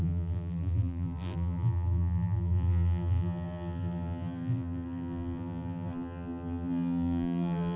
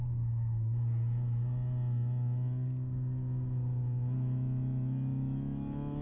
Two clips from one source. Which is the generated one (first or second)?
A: first